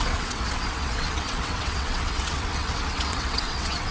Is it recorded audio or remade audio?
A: remade